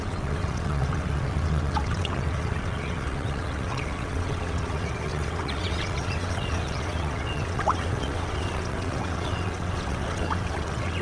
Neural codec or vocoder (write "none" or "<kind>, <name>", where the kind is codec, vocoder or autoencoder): vocoder, WaveNeXt